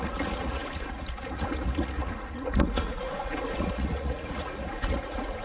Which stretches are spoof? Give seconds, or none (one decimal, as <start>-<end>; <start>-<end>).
0.0-5.4